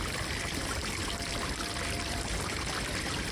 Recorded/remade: remade